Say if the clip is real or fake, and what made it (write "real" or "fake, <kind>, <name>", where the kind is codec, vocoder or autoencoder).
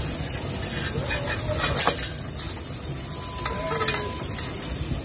real